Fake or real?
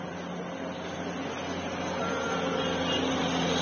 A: real